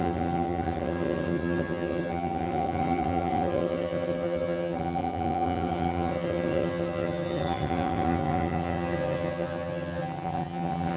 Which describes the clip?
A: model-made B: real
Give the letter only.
A